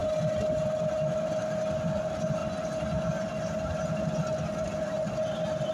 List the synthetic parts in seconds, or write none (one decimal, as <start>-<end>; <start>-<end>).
none